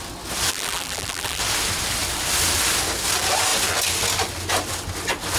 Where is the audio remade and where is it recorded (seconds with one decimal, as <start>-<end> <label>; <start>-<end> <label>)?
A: 0.0-0.5 recorded; 0.5-1.4 remade; 1.4-5.4 recorded